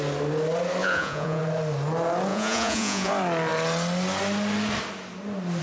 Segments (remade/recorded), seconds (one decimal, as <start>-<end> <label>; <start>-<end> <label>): 0.0-0.8 recorded; 0.8-1.4 remade; 1.4-2.3 recorded; 2.3-3.1 remade; 3.1-5.6 recorded